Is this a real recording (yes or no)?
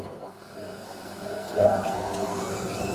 no